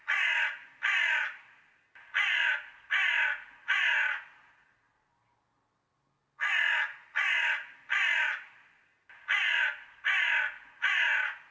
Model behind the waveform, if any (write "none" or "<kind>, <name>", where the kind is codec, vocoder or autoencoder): none